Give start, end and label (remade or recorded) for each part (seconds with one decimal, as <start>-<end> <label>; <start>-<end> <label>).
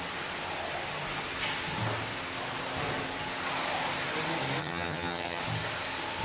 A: 0.0-4.6 recorded; 4.6-5.4 remade; 5.4-6.2 recorded